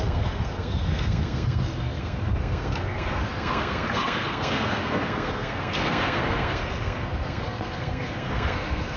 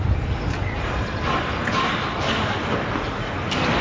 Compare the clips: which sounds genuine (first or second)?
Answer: second